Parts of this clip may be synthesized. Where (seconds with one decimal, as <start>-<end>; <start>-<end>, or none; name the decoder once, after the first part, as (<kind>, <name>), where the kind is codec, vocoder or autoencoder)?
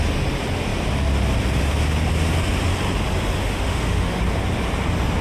3.4-4.2 (autoencoder, DAC-VAE)